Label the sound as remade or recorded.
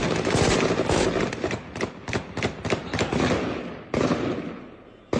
recorded